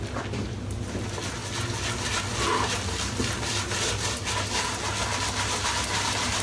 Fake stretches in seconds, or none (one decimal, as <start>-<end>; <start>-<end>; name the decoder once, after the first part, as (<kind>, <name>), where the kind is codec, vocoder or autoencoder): none